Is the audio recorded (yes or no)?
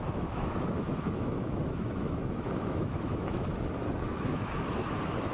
no